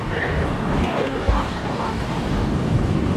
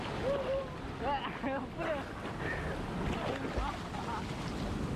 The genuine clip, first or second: second